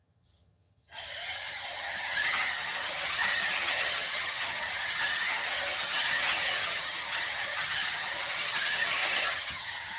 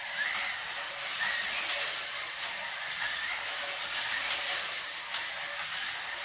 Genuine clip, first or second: second